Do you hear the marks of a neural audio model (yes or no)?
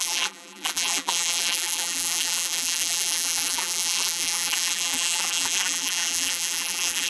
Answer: yes